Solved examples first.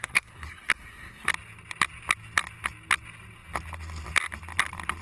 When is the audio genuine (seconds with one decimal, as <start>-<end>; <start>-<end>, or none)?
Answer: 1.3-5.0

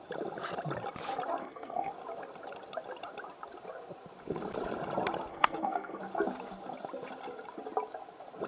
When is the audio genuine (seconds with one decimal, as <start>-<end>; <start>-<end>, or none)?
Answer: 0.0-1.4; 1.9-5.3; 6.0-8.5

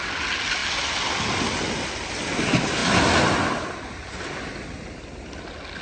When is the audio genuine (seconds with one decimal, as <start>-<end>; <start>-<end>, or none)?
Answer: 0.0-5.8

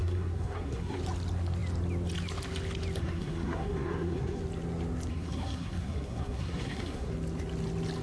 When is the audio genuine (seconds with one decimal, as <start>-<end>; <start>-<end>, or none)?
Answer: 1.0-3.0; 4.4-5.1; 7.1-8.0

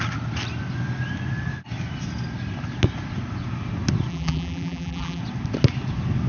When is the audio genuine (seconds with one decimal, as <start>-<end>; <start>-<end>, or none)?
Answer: 0.0-4.1; 5.2-6.3